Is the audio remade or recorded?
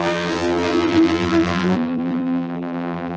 remade